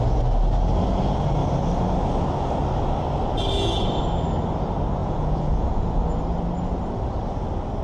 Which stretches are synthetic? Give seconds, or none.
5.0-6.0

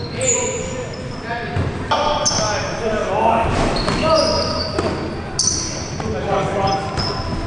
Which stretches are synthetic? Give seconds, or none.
none

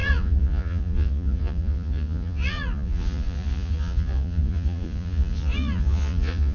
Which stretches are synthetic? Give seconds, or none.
0.0-6.5

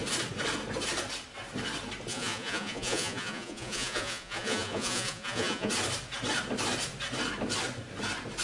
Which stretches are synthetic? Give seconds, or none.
2.1-5.7

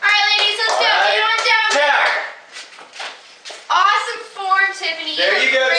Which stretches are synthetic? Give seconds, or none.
1.1-4.6